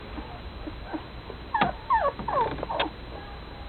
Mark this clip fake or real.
real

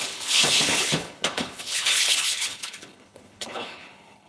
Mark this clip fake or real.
fake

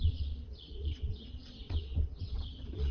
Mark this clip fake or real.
fake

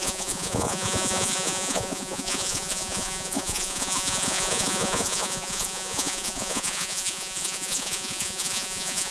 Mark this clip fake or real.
fake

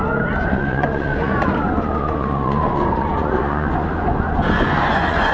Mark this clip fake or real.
fake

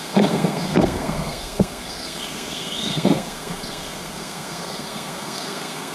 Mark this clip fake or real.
fake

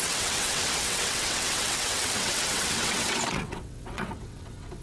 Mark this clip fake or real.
fake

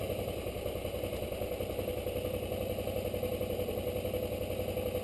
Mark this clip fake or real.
real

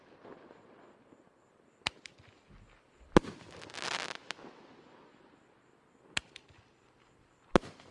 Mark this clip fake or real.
real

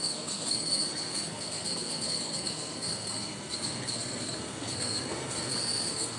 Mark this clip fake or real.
fake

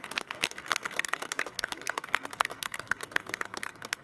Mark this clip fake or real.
fake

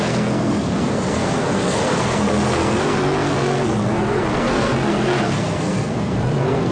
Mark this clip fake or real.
fake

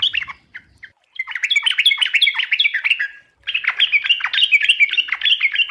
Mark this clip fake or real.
real